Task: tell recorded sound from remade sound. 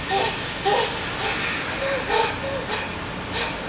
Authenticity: recorded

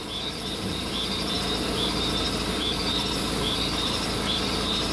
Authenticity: remade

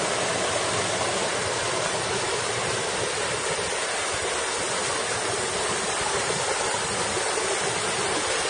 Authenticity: recorded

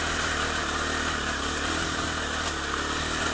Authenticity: recorded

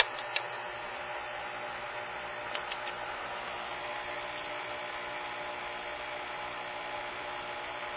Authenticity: recorded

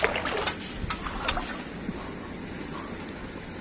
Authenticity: recorded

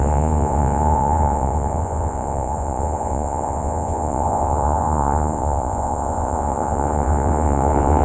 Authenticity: remade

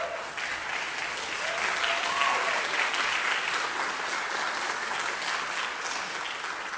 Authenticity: recorded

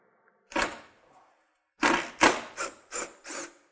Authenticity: recorded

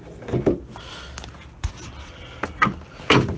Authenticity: recorded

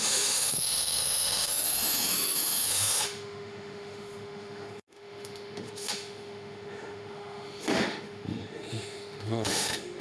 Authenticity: remade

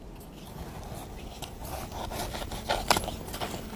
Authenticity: recorded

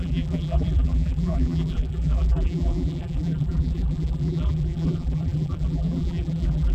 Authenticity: remade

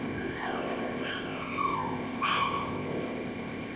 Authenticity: remade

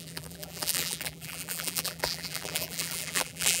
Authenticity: remade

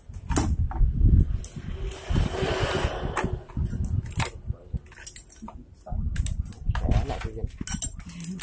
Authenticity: recorded